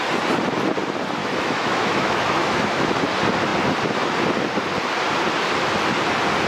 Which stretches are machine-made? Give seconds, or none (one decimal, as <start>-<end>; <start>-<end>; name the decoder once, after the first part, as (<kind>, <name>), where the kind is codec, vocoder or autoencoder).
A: 1.2-3.0 (autoencoder, DAC-VAE)